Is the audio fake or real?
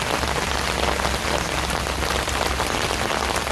real